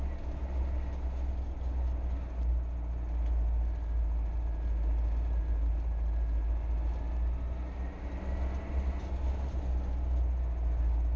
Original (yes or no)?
yes